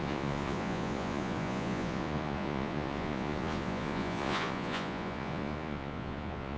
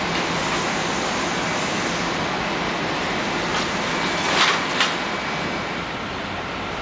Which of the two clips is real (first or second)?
second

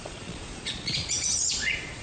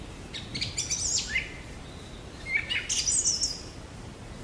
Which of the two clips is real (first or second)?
second